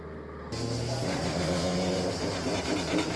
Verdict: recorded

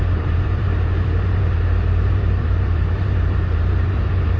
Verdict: remade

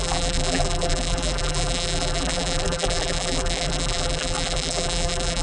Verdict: remade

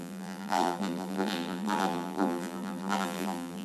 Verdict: remade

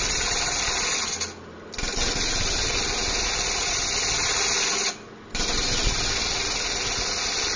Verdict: recorded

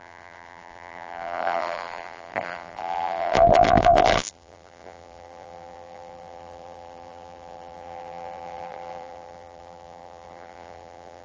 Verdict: remade